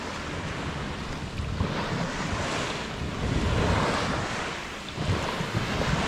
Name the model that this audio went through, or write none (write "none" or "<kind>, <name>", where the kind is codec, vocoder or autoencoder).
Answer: none